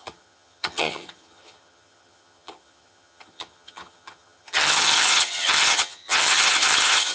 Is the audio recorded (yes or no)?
no